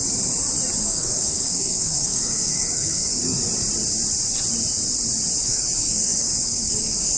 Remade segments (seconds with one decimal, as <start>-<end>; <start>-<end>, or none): 0.8-3.4; 5.4-7.2